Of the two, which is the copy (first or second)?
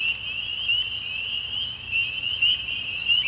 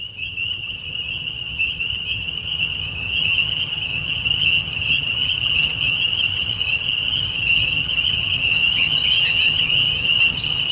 second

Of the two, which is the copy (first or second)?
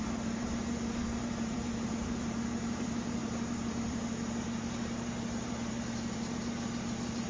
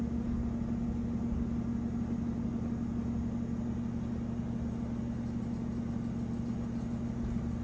first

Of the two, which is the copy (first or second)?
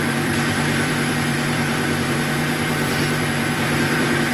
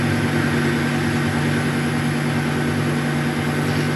first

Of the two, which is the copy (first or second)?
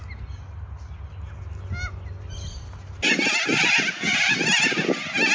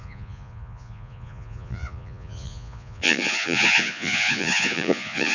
second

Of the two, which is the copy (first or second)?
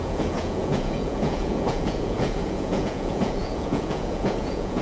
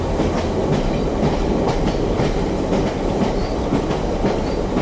first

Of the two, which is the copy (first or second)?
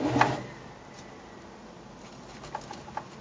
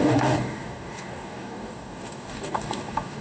second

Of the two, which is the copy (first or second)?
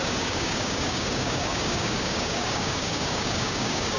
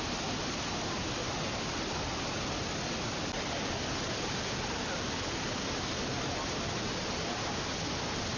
first